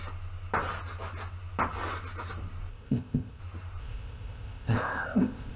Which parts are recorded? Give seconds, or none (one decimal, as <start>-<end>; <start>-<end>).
0.0-2.7; 3.4-3.8

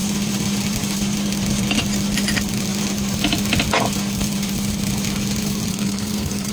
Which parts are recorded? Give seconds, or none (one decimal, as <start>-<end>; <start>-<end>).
0.0-5.7

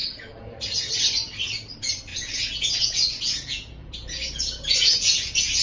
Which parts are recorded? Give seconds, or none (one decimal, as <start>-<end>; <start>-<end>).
0.9-2.1

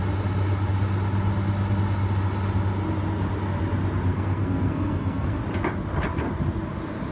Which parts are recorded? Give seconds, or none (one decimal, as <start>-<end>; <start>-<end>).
0.0-4.1; 5.4-7.1

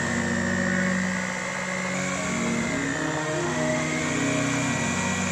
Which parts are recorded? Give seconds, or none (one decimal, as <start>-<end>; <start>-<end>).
0.0-3.2; 4.0-5.3